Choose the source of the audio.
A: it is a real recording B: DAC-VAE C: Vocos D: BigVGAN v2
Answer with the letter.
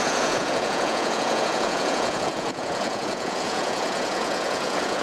C